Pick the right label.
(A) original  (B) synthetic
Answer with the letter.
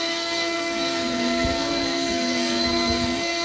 B